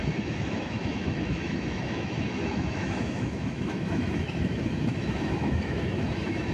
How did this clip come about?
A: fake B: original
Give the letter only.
A